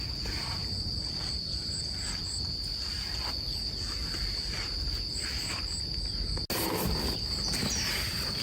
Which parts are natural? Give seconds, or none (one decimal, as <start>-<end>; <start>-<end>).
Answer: 0.0-8.4